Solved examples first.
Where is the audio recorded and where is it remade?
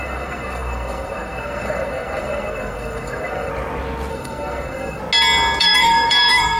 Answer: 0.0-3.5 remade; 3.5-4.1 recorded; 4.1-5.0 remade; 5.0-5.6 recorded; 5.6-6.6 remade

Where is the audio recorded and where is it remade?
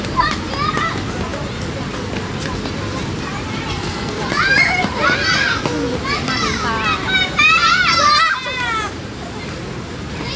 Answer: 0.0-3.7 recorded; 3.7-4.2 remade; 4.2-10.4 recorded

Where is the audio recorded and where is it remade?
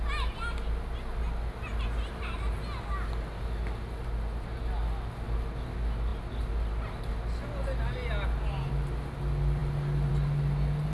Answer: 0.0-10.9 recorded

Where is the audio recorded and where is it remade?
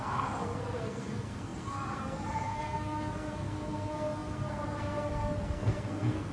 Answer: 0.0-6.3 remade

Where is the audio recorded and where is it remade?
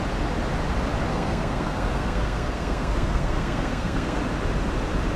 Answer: 0.0-1.1 recorded; 1.1-4.2 remade; 4.2-5.2 recorded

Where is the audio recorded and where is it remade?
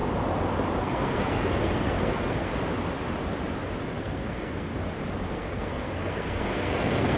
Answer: 0.0-0.8 recorded; 0.8-2.5 remade; 2.5-4.0 recorded; 4.0-4.7 remade; 4.7-5.3 recorded; 5.3-7.2 remade